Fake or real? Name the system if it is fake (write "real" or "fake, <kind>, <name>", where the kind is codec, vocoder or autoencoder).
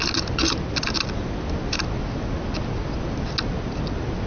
real